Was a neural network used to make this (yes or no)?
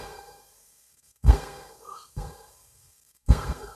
yes